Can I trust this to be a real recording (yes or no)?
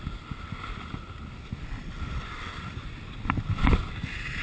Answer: yes